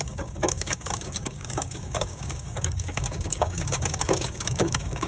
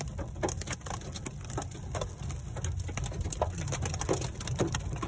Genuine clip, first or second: second